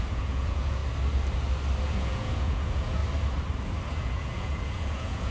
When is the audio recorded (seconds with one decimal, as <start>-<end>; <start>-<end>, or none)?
0.8-1.8; 3.0-3.9